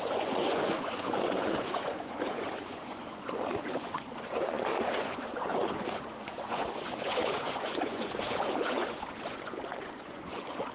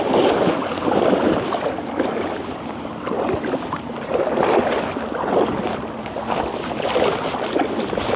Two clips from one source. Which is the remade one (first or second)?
first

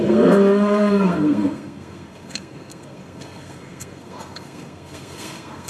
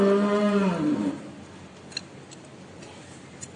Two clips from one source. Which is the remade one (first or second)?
first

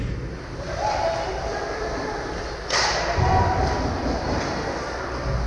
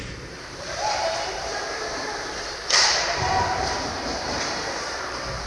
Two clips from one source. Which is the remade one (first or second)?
second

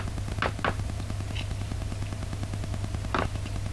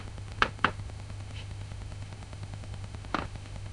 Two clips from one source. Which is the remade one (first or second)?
second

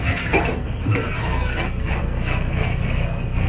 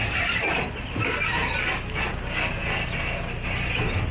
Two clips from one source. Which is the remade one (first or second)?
first